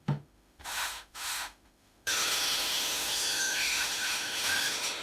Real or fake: fake